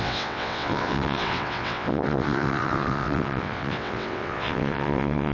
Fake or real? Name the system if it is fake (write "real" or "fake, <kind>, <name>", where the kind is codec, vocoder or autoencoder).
fake, vocoder, WaveNeXt